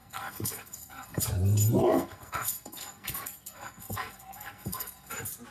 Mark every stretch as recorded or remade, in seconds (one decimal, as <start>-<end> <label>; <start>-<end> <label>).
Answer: 0.0-1.2 remade; 1.2-1.8 recorded; 1.8-5.1 remade; 5.1-5.5 recorded